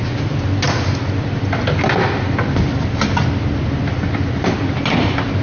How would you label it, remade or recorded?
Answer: recorded